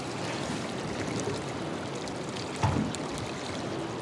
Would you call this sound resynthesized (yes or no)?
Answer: no